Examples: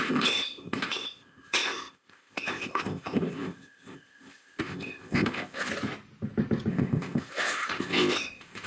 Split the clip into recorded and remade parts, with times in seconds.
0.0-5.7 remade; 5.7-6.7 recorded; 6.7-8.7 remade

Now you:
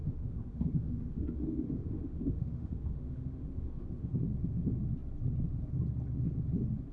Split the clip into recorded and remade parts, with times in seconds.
0.0-4.1 remade; 4.1-6.9 recorded

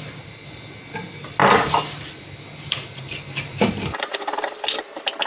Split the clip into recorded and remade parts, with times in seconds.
0.0-1.4 recorded; 1.4-4.6 remade; 4.6-5.3 recorded

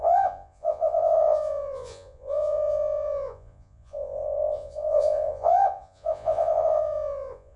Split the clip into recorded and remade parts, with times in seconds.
0.0-7.6 remade

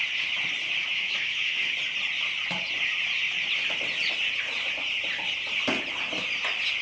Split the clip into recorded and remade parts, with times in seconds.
0.0-0.8 recorded; 0.8-1.7 remade; 1.7-6.8 recorded

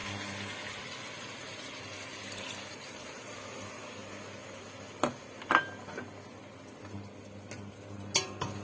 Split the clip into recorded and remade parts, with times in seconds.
0.0-8.6 recorded

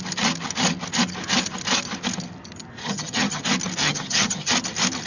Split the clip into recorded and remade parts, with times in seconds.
0.0-2.8 recorded; 2.8-3.4 remade; 3.4-3.8 recorded; 3.8-4.5 remade; 4.5-5.1 recorded

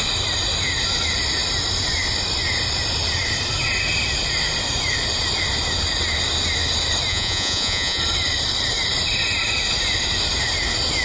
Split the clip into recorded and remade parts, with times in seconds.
0.0-7.1 recorded; 7.1-8.0 remade; 8.0-11.0 recorded